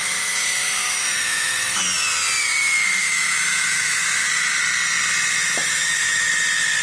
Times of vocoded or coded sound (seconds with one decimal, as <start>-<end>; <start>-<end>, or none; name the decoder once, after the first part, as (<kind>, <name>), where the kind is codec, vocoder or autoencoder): 0.0-1.8 (autoencoder, DAC-VAE); 2.4-4.6; 5.6-6.3